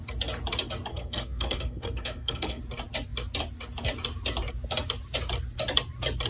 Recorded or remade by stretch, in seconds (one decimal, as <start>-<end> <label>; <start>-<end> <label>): 0.0-0.9 recorded; 0.9-2.6 remade; 2.6-6.3 recorded